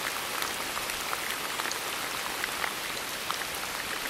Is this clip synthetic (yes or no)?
no